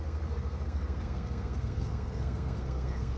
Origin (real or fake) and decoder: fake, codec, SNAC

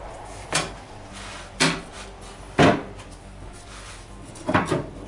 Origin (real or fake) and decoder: real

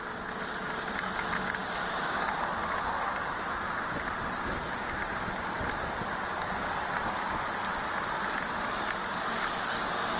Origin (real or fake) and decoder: real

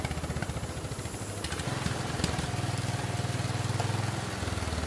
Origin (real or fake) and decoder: real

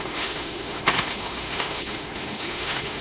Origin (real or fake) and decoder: fake, autoencoder, DAC-VAE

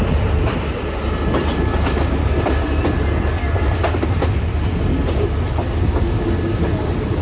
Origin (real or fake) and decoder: real